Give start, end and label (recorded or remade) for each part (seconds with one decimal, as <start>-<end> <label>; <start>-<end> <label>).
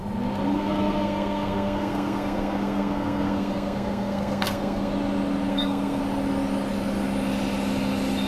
0.0-0.5 recorded; 0.5-4.9 remade; 4.9-5.5 recorded; 5.5-6.0 remade; 6.0-8.3 recorded